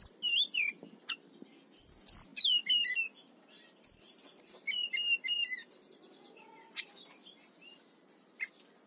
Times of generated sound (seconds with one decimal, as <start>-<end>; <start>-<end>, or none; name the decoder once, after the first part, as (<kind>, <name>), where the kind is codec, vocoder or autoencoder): none